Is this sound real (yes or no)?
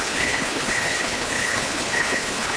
no